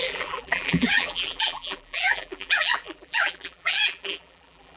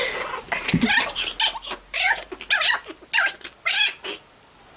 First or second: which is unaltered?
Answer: second